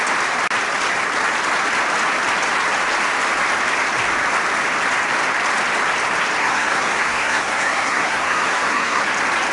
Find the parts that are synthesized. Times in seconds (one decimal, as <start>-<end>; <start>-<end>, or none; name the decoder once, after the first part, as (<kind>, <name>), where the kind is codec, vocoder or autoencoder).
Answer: 6.4-9.0 (codec, SNAC)